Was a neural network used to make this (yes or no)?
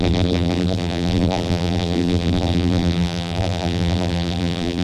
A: yes